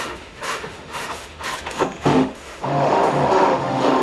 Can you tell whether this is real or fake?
fake